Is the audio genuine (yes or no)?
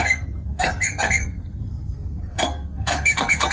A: no